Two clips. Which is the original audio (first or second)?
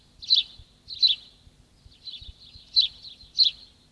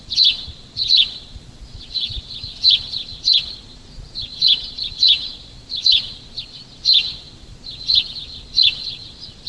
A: first